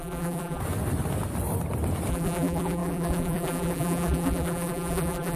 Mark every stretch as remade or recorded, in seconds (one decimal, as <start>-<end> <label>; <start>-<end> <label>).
0.0-0.6 remade; 0.6-2.1 recorded; 2.1-5.4 remade